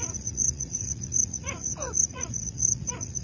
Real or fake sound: fake